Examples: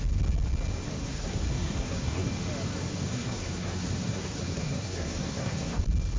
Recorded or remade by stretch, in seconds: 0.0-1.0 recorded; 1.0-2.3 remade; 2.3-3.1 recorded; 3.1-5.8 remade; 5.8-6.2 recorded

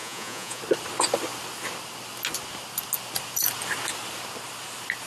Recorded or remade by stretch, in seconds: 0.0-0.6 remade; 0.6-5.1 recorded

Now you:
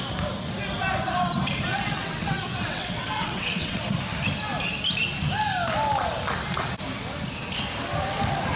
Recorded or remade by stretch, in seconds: 0.0-1.7 recorded; 1.7-3.8 remade; 3.8-8.6 recorded

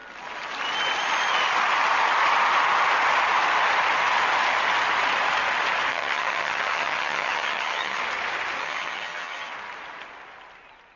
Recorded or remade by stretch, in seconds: 0.0-5.9 recorded; 5.9-8.0 remade; 8.0-8.6 recorded; 8.6-9.5 remade; 9.5-11.0 recorded

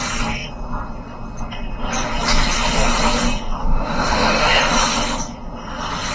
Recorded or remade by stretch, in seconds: 0.0-3.6 recorded; 3.6-4.6 remade; 4.6-6.1 recorded